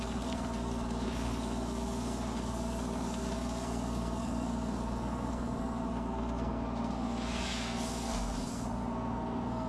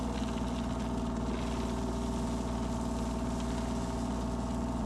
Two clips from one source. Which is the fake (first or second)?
first